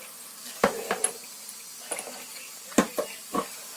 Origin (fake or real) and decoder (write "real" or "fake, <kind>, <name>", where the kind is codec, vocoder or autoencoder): real